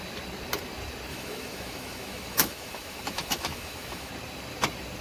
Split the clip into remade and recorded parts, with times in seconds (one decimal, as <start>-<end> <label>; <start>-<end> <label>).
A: 0.0-1.1 recorded; 1.1-4.1 remade; 4.1-5.0 recorded